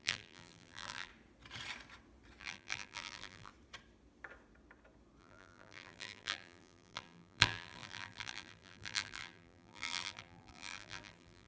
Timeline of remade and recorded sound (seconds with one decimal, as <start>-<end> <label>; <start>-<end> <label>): 0.0-1.1 remade; 1.1-2.4 recorded; 2.4-3.5 remade; 3.5-5.2 recorded; 5.2-11.5 remade